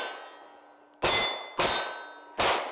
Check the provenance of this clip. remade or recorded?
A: recorded